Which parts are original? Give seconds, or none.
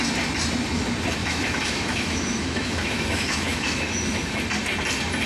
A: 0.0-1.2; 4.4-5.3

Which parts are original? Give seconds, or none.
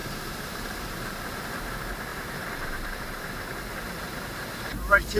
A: 1.0-2.1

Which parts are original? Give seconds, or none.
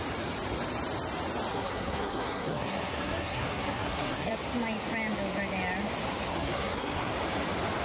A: 0.0-1.5; 4.3-6.3; 7.1-7.8